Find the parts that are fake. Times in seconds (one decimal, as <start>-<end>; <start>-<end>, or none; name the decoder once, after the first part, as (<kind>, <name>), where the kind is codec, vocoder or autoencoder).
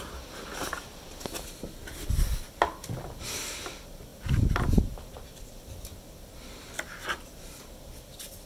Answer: none